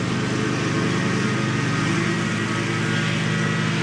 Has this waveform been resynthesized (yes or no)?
no